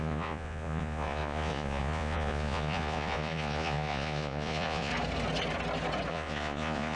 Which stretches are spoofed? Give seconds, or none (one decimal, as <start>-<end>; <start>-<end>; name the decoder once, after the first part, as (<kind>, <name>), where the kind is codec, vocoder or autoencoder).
0.0-4.9 (vocoder, Vocos); 6.1-7.0